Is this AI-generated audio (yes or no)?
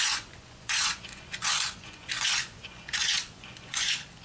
yes